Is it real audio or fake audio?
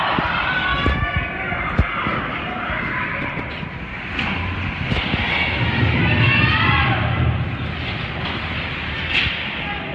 real